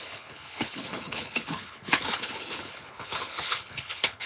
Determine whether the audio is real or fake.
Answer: fake